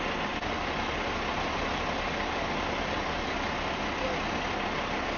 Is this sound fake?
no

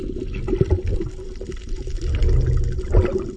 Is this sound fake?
no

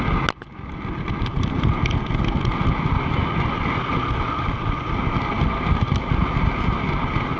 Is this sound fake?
no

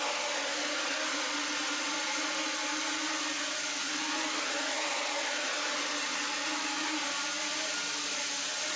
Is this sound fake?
no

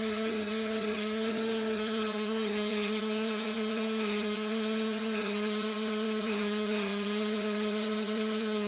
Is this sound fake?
yes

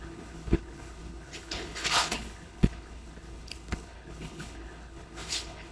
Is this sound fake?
yes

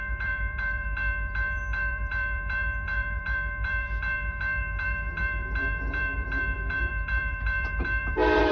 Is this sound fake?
yes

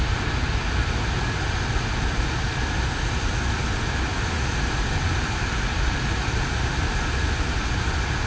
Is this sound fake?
no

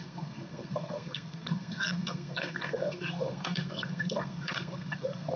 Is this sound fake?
yes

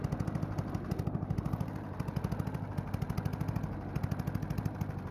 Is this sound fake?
no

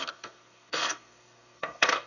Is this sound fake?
yes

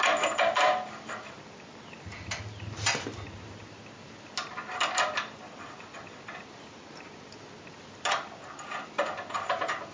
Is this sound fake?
no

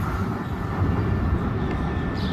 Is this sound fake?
no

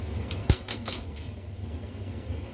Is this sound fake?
yes